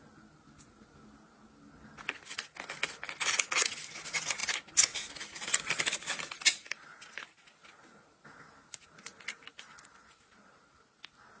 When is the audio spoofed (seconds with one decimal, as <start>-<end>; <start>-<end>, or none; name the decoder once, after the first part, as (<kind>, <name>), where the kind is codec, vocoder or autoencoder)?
none